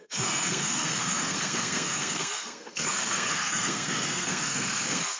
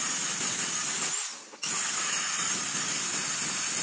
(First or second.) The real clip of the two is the second